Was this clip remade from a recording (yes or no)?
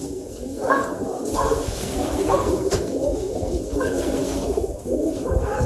yes